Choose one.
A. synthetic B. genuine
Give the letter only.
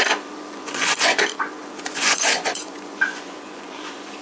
A